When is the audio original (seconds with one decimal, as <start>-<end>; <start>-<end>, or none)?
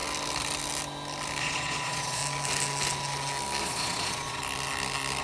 0.0-1.4; 2.2-3.6; 4.4-5.2